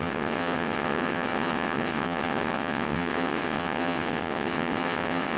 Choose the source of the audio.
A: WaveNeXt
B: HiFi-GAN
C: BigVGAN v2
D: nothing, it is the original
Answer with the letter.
A